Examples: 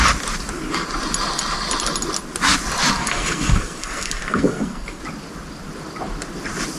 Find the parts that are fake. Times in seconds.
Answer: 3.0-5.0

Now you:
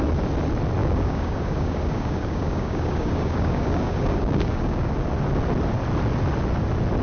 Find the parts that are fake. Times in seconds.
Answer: 0.8-4.9